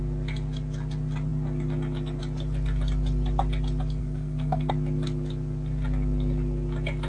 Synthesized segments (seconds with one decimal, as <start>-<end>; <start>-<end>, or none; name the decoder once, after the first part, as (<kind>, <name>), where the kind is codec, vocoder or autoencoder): 4.0-4.7 (codec, SNAC)